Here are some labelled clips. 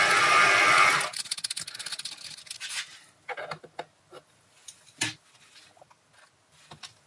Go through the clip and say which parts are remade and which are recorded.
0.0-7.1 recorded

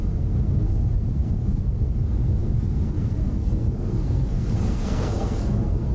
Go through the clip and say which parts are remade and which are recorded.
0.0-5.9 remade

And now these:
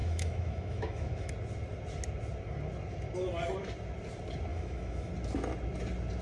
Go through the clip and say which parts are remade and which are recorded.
0.0-1.3 remade; 1.3-4.5 recorded; 4.5-5.1 remade; 5.1-6.2 recorded

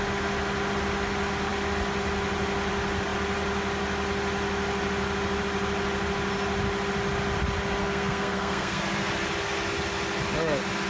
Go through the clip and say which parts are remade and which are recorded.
0.0-7.8 recorded; 7.8-8.8 remade; 8.8-10.9 recorded

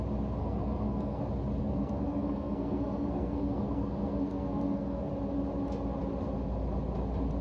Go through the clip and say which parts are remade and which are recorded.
0.0-0.4 recorded; 0.4-1.2 remade; 1.2-1.6 recorded; 1.6-5.1 remade; 5.1-7.4 recorded

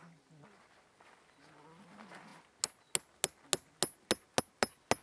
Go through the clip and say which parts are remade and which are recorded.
0.0-5.0 recorded

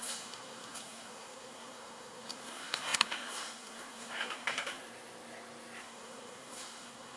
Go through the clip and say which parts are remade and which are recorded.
0.0-4.8 remade; 4.8-5.8 recorded; 5.8-7.2 remade

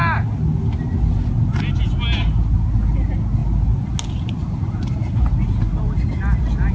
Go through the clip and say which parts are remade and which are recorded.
0.0-6.7 recorded